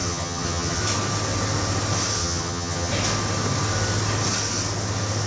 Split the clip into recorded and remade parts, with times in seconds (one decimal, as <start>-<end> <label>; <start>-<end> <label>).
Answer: 0.0-0.8 remade; 0.8-2.2 recorded; 2.2-2.9 remade; 2.9-5.3 recorded

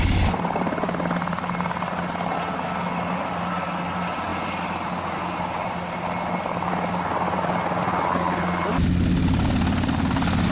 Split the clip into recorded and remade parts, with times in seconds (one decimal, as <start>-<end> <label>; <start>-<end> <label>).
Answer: 0.0-10.5 recorded

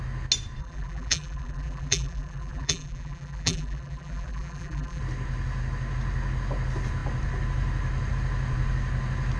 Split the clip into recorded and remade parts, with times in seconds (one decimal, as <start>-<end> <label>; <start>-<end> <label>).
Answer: 0.0-0.6 recorded; 0.6-5.0 remade; 5.0-9.4 recorded

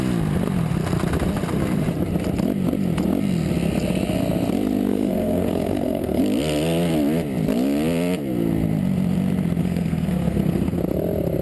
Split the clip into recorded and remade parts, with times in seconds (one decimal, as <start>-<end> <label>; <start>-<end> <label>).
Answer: 0.0-4.9 recorded; 4.9-6.2 remade; 6.2-9.6 recorded; 9.6-10.8 remade; 10.8-11.4 recorded

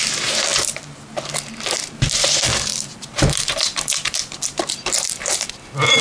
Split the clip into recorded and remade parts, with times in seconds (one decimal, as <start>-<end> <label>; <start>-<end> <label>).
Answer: 0.0-0.5 recorded; 0.5-1.3 remade; 1.3-2.7 recorded; 2.7-5.5 remade; 5.5-6.0 recorded

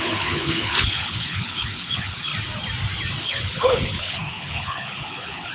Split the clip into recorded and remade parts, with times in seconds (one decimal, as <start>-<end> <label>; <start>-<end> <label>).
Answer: 0.0-2.3 remade; 2.3-3.2 recorded; 3.2-5.5 remade

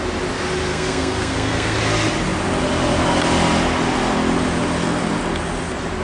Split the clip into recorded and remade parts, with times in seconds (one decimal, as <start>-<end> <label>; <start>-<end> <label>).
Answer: 0.0-0.7 recorded; 0.7-1.8 remade; 1.8-6.0 recorded